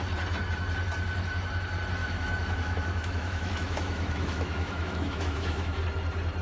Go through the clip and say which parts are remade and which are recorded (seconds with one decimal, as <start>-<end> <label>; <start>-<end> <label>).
0.0-2.0 recorded; 2.0-5.8 remade; 5.8-6.4 recorded